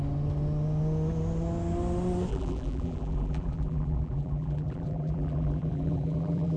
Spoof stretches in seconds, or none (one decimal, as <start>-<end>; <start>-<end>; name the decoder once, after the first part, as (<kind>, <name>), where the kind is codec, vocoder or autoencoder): 2.3-6.6 (vocoder, BigVGAN v2)